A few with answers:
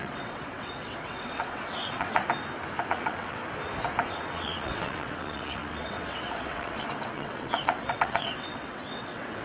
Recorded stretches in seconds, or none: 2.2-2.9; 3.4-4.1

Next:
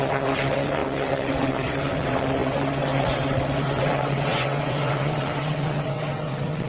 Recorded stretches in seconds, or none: none

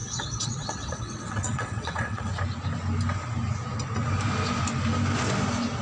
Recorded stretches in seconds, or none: 2.3-5.8

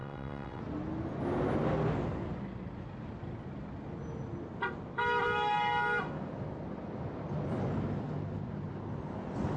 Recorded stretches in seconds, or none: 0.6-9.6

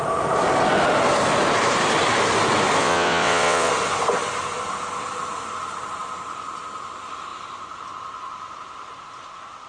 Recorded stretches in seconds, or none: 0.0-2.8; 3.7-9.7

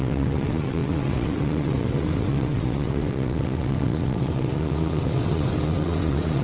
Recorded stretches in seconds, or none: none

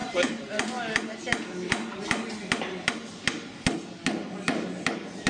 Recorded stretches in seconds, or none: 0.0-5.3

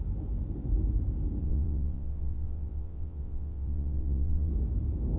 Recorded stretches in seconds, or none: 0.0-1.4; 4.5-5.2